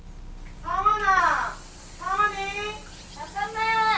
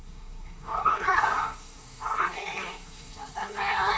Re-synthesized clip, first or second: second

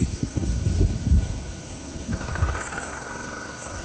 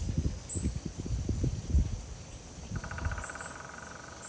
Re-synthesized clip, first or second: first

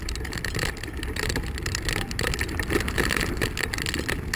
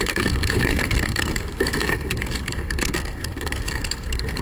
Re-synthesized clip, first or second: second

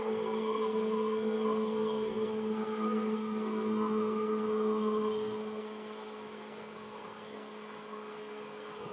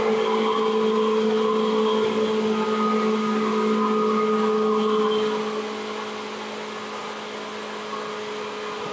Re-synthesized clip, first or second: first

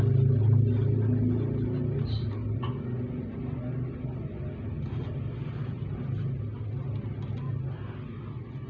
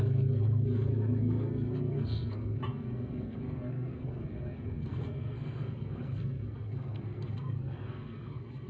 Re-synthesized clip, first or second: second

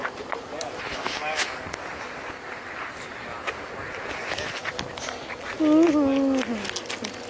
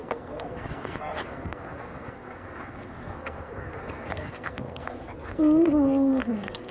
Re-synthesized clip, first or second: second